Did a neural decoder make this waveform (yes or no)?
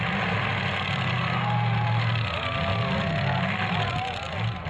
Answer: no